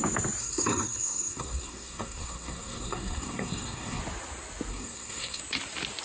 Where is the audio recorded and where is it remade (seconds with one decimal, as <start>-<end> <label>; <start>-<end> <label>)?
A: 0.0-0.4 recorded; 0.4-4.0 remade; 4.0-4.7 recorded; 4.7-5.4 remade; 5.4-6.0 recorded